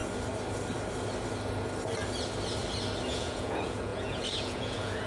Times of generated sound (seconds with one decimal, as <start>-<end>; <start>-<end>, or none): 3.1-5.1